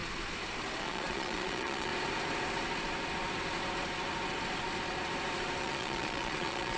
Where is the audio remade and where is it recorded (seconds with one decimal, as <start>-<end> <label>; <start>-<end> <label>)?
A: 0.0-0.8 recorded; 0.8-1.9 remade; 1.9-5.6 recorded; 5.6-6.8 remade